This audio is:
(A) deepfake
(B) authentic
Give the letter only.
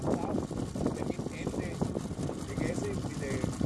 B